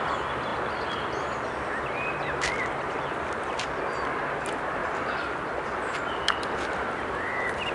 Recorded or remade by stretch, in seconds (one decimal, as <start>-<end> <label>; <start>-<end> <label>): 0.0-0.5 recorded; 0.5-3.8 remade; 3.8-7.7 recorded